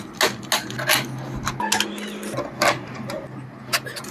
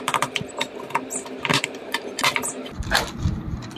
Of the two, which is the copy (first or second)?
second